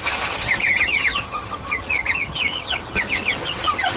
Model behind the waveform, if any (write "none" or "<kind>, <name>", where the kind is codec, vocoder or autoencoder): vocoder, HiFi-GAN